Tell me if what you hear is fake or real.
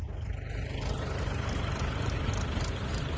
real